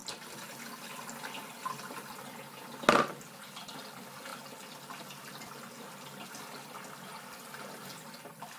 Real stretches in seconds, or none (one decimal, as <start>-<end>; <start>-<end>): 0.0-8.6